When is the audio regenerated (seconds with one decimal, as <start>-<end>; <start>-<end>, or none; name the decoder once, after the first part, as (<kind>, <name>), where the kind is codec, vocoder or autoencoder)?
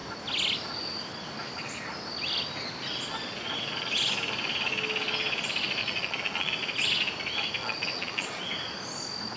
5.8-6.5 (vocoder, Vocos); 7.6-8.4